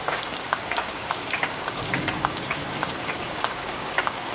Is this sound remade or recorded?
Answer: remade